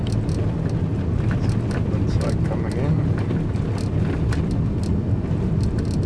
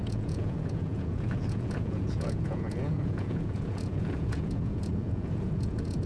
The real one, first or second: first